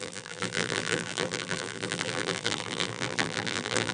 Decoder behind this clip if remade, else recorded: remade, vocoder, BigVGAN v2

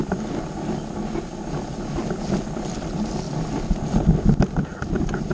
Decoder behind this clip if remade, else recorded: recorded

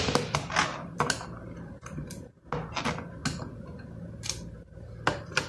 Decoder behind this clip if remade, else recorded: recorded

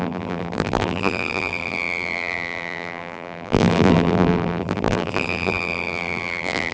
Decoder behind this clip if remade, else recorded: remade, vocoder, BigVGAN v2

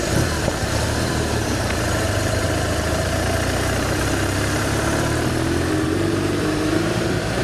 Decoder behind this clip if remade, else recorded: remade, vocoder, BigVGAN v2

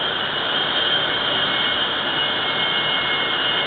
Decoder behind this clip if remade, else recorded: recorded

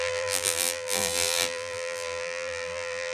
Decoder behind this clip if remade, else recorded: remade, vocoder, BigVGAN v2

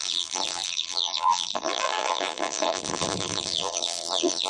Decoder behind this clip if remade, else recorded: remade, vocoder, BigVGAN v2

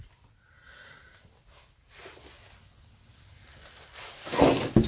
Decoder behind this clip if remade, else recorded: recorded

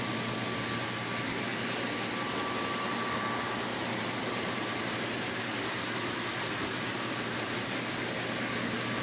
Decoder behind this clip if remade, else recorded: recorded